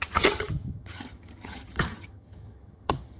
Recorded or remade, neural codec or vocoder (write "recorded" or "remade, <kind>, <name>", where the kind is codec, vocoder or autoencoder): remade, vocoder, HiFi-GAN